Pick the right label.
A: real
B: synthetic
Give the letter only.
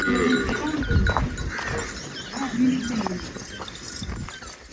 A